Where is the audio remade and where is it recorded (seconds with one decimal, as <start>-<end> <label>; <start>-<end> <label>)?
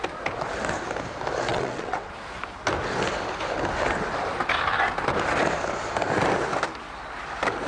0.0-1.5 recorded; 1.5-2.1 remade; 2.1-7.7 recorded